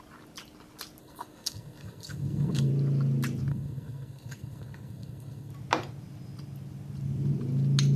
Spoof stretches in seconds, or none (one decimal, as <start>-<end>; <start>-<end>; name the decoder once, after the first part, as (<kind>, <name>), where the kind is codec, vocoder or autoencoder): 1.0-2.7 (codec, SNAC); 3.5-5.5